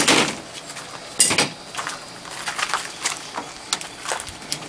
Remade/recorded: recorded